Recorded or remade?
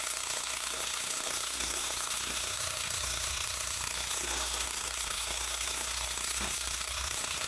remade